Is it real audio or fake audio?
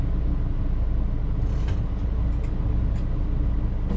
real